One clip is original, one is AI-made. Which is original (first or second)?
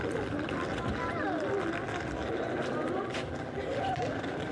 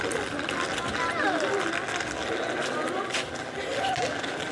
second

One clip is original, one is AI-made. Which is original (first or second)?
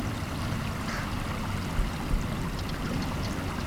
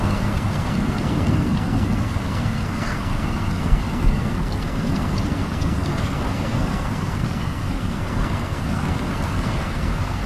first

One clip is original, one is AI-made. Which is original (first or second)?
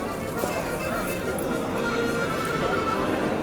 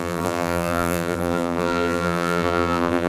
first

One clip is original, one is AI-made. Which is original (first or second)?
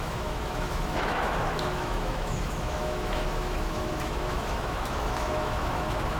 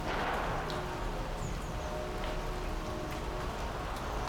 second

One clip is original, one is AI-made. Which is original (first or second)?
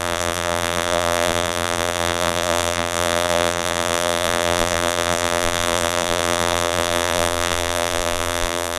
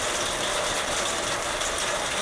second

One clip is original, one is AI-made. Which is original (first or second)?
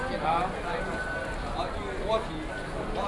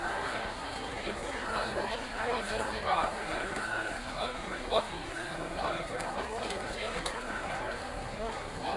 first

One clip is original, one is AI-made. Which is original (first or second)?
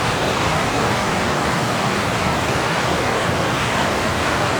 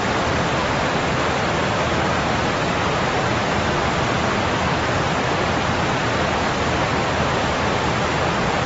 second